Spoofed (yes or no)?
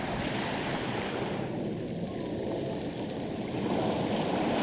no